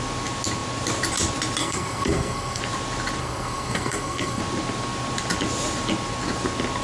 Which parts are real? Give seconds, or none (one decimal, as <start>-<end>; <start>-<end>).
0.0-1.6; 2.6-3.2; 4.4-6.8